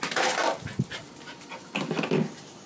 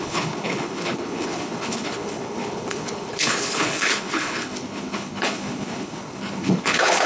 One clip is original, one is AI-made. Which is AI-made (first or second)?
second